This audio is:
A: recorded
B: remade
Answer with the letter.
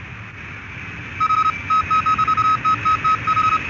A